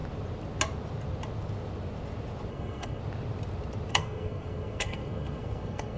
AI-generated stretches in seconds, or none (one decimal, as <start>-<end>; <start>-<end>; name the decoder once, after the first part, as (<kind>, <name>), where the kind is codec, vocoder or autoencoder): 2.5-3.0 (codec, SNAC); 3.9-6.0